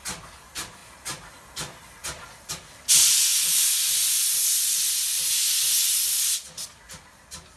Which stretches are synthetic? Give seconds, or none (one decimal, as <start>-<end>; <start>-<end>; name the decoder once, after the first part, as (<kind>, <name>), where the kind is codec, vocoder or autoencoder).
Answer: none